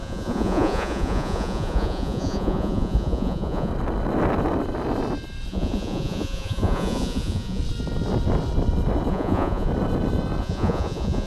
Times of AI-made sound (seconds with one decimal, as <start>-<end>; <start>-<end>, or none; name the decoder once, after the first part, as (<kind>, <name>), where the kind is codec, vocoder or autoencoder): 0.0-3.7 (vocoder, Vocos); 5.5-7.6; 9.1-9.7; 10.4-11.3

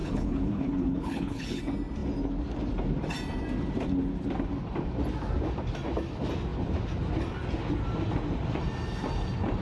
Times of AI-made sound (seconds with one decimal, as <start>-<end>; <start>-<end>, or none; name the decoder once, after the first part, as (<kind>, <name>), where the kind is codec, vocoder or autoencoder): 0.0-1.6 (codec, HILCodec)